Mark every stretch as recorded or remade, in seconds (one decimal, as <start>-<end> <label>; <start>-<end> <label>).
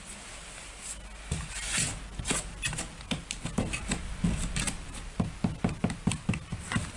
0.0-7.0 recorded